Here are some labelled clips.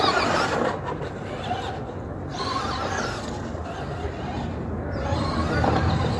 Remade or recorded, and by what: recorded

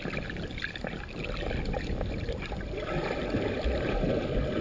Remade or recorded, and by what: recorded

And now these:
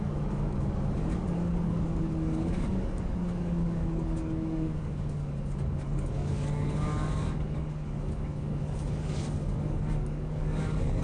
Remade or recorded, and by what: remade, codec, DAC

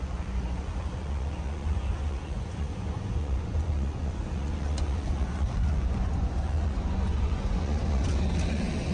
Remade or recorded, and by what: remade, vocoder, Vocos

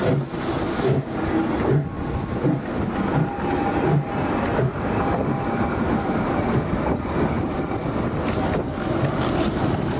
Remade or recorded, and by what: recorded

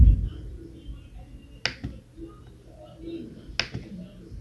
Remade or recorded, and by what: recorded